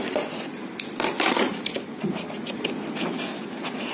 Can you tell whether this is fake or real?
real